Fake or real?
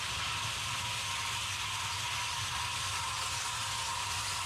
real